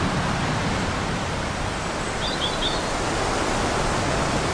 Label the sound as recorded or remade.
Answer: recorded